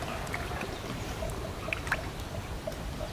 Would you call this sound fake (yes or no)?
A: no